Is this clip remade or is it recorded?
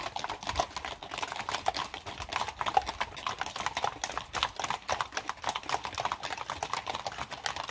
recorded